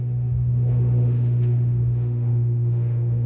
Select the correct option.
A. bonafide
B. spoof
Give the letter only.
B